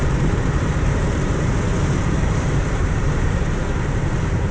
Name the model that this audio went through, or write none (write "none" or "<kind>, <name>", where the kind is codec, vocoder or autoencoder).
vocoder, BigVGAN v2